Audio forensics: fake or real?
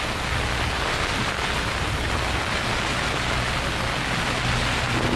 real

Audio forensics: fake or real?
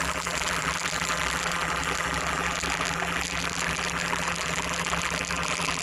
fake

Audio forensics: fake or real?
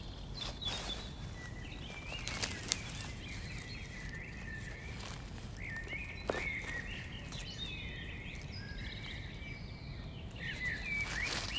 real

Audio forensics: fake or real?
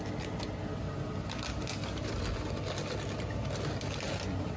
real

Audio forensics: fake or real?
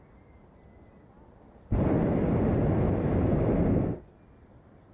real